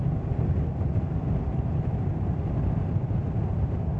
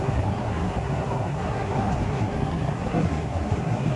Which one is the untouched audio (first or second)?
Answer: first